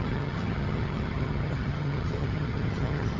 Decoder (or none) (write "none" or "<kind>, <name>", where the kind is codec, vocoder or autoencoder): vocoder, HiFi-GAN